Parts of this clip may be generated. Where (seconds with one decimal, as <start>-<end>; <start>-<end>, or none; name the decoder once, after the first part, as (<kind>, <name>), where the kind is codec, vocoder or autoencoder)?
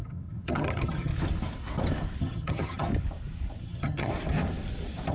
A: 0.0-1.1 (vocoder, HiFi-GAN); 2.2-2.9; 3.6-4.1